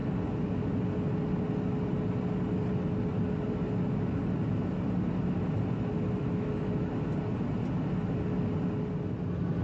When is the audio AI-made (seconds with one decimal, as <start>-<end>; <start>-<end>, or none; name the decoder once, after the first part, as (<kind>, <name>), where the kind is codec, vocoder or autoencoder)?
6.2-6.9 (autoencoder, DAC-VAE)

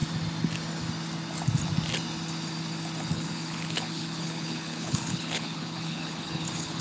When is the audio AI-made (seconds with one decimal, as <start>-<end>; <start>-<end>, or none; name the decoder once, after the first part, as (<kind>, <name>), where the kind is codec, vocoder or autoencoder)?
3.0-6.8 (codec, HILCodec)

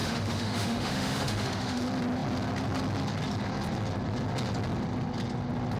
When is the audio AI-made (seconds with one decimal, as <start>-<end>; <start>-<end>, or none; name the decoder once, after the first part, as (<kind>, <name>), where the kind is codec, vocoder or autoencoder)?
0.0-1.8 (autoencoder, DAC-VAE)

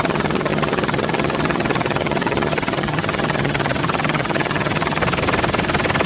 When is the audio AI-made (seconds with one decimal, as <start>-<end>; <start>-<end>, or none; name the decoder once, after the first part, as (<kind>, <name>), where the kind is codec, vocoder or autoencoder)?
0.0-5.0 (vocoder, HiFi-GAN)

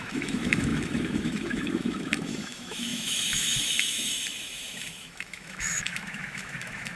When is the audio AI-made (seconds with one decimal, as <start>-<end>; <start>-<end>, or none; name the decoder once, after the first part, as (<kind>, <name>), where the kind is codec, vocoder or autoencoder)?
0.0-7.0 (autoencoder, DAC-VAE)

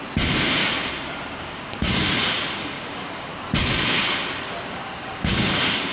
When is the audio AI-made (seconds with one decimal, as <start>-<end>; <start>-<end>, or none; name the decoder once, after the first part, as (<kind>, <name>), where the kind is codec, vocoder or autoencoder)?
1.4-2.0 (codec, DAC); 2.6-3.3; 4.7-5.9

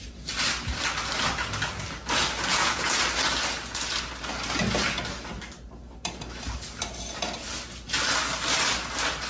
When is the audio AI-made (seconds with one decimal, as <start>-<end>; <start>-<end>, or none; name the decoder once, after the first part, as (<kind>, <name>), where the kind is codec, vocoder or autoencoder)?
2.5-3.0 (vocoder, Vocos)

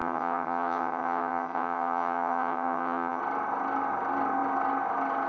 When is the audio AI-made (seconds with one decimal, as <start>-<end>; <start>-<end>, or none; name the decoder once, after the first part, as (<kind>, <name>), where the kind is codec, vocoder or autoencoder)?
0.0-3.2 (vocoder, HiFi-GAN)